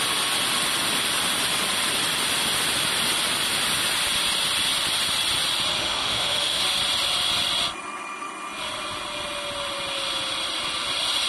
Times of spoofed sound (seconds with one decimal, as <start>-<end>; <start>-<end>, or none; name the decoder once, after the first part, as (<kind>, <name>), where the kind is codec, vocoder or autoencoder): 5.8-6.6 (autoencoder, DAC-VAE)